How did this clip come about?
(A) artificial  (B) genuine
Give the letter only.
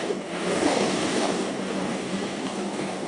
A